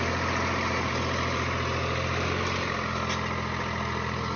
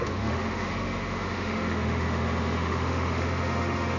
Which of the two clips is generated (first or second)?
second